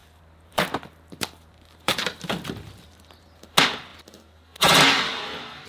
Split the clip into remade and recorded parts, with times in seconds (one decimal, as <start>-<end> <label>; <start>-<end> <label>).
0.0-3.2 remade; 3.2-5.7 recorded